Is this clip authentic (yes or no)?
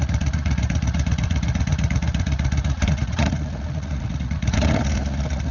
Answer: no